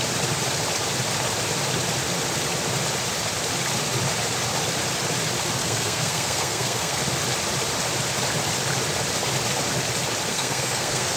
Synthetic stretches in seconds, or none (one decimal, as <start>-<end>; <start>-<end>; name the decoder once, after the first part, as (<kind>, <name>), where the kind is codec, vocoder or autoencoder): 5.6-7.0 (codec, SNAC); 10.3-11.2